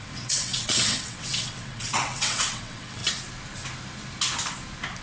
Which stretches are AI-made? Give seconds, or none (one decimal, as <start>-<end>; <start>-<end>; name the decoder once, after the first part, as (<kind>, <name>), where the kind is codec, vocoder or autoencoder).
0.0-3.0 (vocoder, WaveNeXt)